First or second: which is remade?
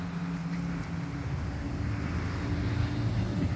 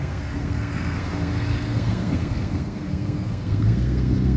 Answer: second